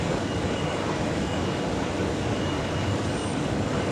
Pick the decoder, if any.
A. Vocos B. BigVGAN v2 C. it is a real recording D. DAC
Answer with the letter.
D